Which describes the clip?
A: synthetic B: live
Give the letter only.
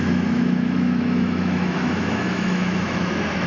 A